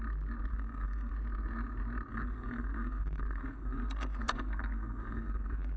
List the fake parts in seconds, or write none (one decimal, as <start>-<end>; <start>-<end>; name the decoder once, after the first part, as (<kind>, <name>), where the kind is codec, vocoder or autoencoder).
0.5-1.1 (codec, SNAC); 2.1-5.8